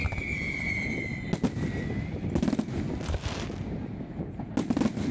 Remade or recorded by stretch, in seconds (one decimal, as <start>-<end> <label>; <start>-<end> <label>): 0.0-5.1 recorded